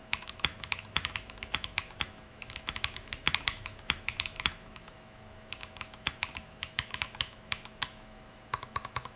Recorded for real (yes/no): no